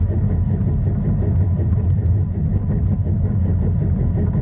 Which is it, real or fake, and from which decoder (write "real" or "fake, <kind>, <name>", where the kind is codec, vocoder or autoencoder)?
real